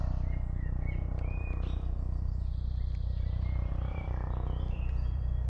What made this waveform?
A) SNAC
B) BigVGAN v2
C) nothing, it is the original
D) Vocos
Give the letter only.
B